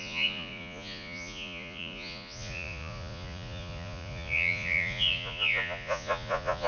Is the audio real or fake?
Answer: fake